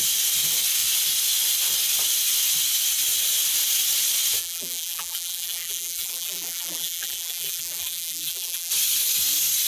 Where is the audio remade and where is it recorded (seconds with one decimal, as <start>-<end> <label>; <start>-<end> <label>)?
0.0-4.4 recorded; 4.4-8.7 remade; 8.7-9.7 recorded